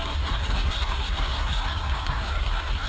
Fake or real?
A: fake